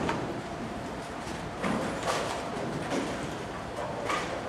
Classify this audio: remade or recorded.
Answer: remade